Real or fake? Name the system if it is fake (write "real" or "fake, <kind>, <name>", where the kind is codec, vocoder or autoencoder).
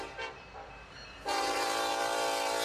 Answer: fake, vocoder, BigVGAN v2